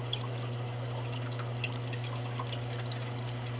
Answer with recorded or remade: recorded